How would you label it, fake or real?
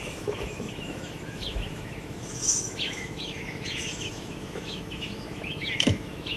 fake